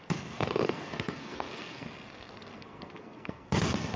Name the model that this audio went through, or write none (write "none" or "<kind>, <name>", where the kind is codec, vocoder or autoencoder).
codec, SNAC